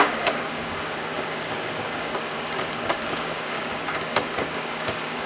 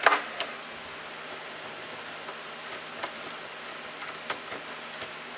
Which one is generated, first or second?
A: first